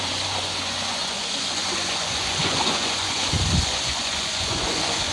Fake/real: fake